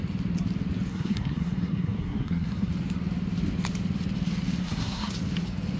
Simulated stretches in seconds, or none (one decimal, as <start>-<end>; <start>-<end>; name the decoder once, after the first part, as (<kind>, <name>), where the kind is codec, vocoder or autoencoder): 0.9-2.7 (codec, SNAC); 4.6-5.1